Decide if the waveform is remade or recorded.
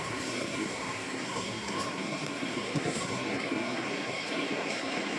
remade